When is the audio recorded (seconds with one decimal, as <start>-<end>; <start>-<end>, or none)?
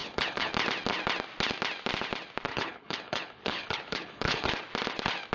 0.5-2.5; 4.5-5.3